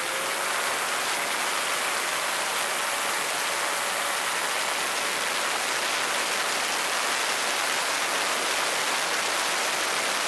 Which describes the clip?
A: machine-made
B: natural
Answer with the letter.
B